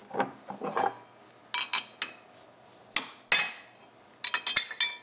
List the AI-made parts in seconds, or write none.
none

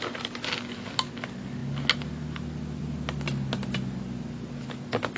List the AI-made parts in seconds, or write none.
none

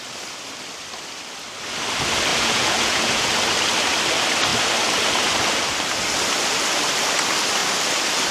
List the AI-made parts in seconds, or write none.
2.3-3.3 (vocoder, Vocos)